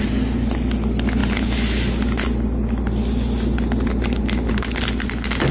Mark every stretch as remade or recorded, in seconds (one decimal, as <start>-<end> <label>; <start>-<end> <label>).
0.0-5.5 recorded